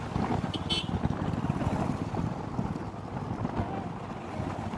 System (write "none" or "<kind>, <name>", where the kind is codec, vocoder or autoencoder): none